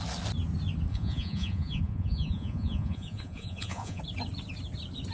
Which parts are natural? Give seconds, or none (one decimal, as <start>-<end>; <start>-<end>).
0.0-0.9; 4.0-5.1